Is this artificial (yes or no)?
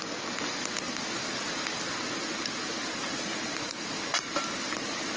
no